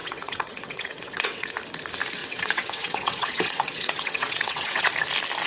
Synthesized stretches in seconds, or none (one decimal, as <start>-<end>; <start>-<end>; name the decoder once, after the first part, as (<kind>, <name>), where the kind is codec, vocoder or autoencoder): 0.0-1.5 (vocoder, WaveNeXt); 2.2-4.9